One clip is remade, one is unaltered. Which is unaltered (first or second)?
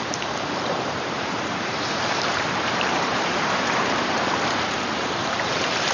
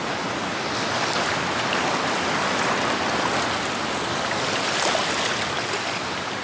second